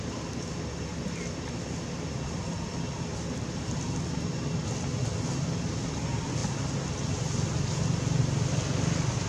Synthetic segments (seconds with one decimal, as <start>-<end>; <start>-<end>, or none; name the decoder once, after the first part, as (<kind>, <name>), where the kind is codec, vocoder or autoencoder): none